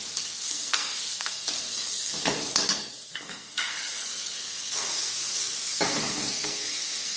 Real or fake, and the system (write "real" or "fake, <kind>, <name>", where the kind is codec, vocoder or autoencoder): fake, codec, SNAC